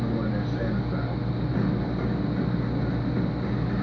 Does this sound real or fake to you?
real